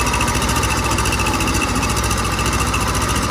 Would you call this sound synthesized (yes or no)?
yes